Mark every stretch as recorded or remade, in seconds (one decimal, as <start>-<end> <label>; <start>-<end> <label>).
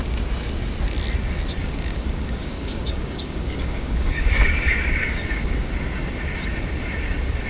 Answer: 0.0-1.6 recorded; 1.6-5.7 remade; 5.7-7.5 recorded